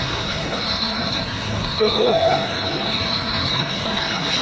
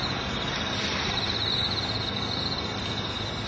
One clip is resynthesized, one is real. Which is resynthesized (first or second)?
first